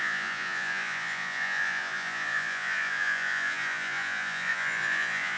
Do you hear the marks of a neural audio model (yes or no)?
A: yes